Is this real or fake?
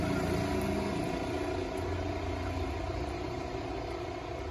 real